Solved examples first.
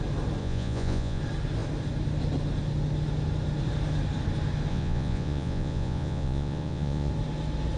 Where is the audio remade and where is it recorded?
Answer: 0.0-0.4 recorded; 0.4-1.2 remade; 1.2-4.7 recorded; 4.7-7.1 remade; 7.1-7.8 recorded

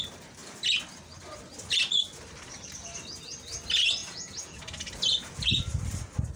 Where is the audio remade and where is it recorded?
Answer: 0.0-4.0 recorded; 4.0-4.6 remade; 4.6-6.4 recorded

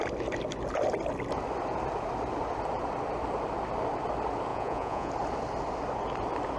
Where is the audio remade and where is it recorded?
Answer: 0.0-4.5 recorded; 4.5-5.1 remade; 5.1-6.6 recorded

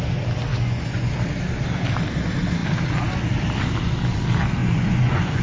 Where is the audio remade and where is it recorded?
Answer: 0.0-0.5 recorded; 0.5-1.1 remade; 1.1-4.6 recorded; 4.6-5.4 remade